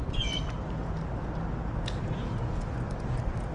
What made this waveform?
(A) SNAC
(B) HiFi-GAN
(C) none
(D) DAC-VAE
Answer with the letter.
C